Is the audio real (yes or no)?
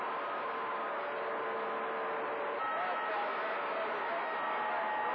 yes